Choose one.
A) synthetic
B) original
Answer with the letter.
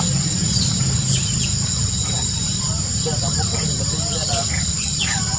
B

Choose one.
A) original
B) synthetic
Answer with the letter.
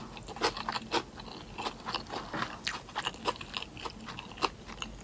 A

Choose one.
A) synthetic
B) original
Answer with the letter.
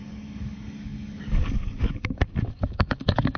A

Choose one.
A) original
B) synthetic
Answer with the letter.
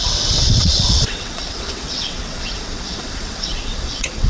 B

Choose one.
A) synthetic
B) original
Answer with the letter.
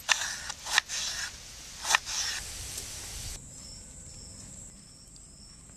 B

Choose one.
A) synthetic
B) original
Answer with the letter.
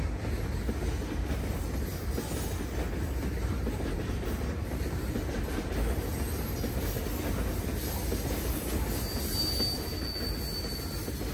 B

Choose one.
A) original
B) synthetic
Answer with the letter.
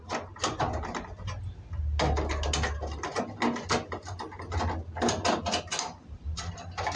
A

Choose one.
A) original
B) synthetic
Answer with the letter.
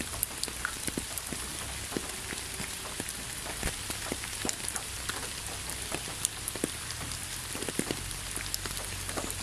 A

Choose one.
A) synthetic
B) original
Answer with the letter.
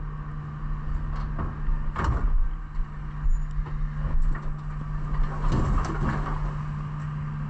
B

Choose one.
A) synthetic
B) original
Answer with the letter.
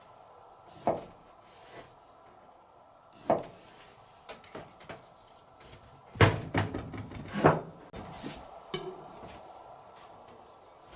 B